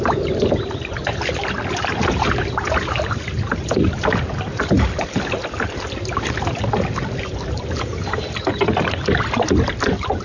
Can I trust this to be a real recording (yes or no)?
yes